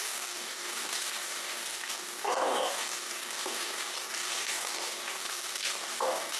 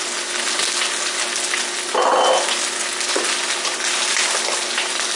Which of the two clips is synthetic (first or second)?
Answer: first